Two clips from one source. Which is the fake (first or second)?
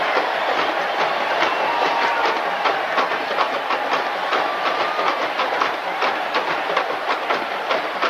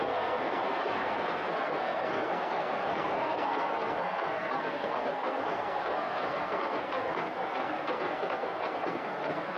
second